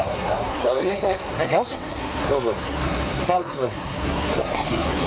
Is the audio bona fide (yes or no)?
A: no